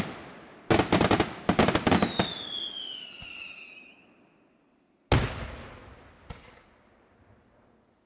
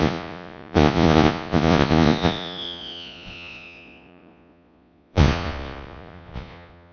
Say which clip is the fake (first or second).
second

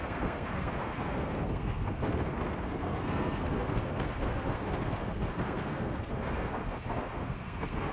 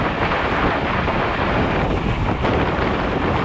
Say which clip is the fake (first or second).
first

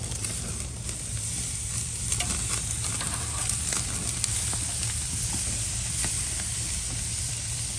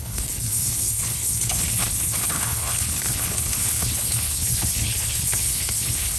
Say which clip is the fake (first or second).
second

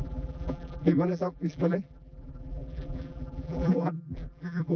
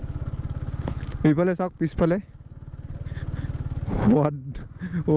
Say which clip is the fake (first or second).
first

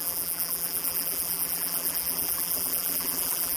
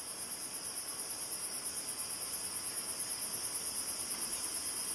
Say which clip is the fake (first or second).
first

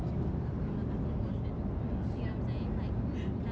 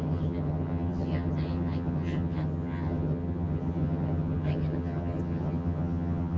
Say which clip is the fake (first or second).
second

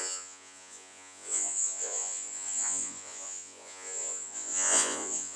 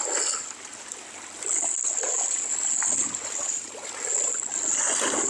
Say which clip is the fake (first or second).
first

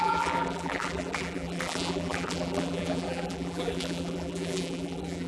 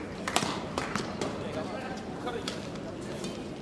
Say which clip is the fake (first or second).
first